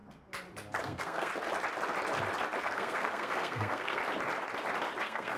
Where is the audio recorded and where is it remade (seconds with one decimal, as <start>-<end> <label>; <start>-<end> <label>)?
0.0-0.8 recorded; 0.8-1.3 remade; 1.3-2.6 recorded; 2.6-4.0 remade; 4.0-5.0 recorded; 5.0-5.4 remade

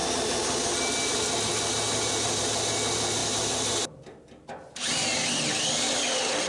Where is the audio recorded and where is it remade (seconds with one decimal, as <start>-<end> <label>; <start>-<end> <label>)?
0.0-6.5 recorded

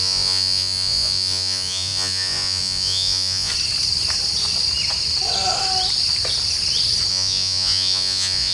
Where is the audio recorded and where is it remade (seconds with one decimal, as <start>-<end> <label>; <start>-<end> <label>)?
0.0-3.5 remade; 3.5-7.1 recorded; 7.1-8.5 remade

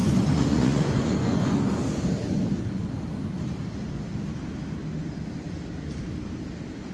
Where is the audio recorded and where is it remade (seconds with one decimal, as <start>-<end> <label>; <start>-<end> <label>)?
0.0-1.8 remade; 1.8-6.9 recorded

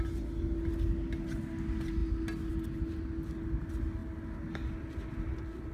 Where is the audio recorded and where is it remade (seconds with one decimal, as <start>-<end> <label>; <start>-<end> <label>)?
0.0-5.7 recorded

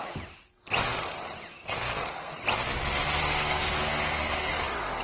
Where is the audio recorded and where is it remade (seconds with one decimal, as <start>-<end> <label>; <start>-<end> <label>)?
0.0-1.5 recorded; 1.5-2.3 remade; 2.3-3.2 recorded; 3.2-4.5 remade; 4.5-5.0 recorded

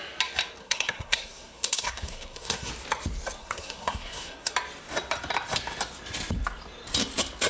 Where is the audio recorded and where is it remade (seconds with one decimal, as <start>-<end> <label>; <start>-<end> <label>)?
0.0-0.6 recorded; 0.6-2.7 remade; 2.7-3.4 recorded; 3.4-4.5 remade; 4.5-7.5 recorded

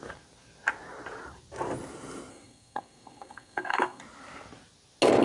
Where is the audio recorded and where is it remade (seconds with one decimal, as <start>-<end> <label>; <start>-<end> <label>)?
0.0-2.3 recorded; 2.3-4.0 remade; 4.0-5.2 recorded